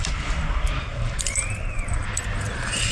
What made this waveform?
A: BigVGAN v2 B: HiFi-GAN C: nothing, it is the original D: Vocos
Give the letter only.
A